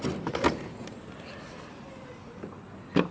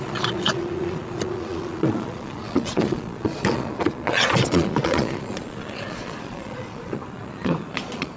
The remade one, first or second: second